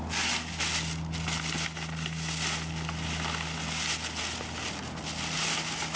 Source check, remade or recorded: recorded